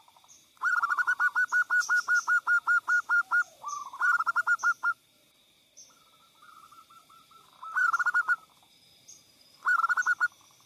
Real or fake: fake